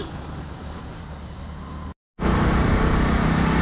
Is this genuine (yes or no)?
yes